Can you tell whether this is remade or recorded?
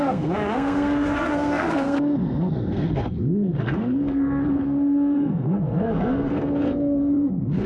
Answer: remade